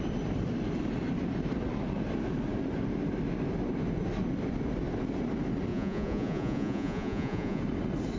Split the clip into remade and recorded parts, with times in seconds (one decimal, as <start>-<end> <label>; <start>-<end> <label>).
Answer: 0.0-5.7 recorded; 5.7-7.6 remade; 7.6-8.2 recorded